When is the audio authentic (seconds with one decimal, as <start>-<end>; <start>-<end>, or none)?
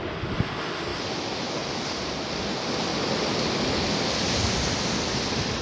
0.0-0.9; 2.0-5.6